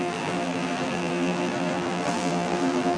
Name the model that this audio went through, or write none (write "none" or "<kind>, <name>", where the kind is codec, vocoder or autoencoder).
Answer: vocoder, BigVGAN v2